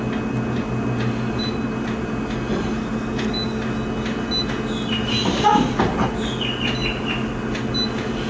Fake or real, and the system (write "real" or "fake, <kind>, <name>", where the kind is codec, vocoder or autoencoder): real